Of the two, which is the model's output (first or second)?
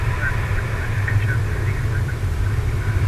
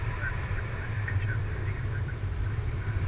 second